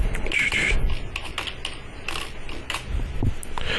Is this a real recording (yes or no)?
yes